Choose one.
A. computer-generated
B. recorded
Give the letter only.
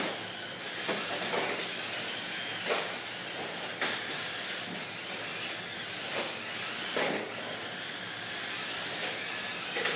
B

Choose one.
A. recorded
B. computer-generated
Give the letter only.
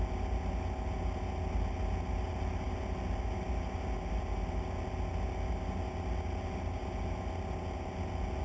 A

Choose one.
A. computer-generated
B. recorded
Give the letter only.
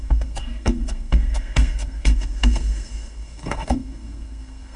A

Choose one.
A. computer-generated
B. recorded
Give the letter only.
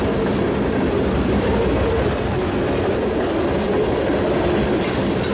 B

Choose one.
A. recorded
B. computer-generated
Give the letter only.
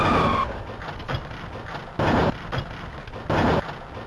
A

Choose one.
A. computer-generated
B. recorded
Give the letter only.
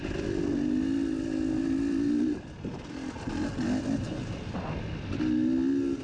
B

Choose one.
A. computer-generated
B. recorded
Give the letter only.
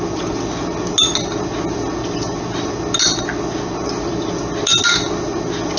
B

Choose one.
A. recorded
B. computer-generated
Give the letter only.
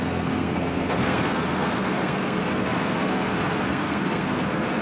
B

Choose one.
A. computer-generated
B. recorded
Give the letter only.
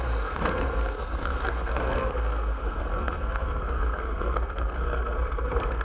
A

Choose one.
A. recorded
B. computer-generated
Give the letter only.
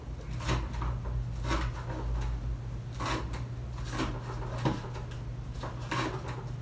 A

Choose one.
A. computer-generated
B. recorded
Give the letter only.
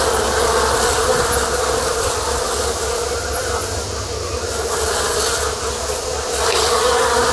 B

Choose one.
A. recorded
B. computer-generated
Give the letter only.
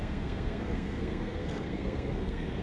B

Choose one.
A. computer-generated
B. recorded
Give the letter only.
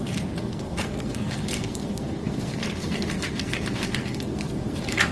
A